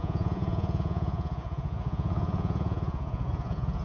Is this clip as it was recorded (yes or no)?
no